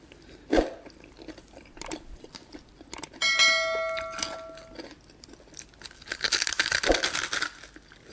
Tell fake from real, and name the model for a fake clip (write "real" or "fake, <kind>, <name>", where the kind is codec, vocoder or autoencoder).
real